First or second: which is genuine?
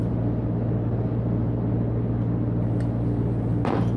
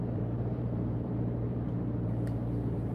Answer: first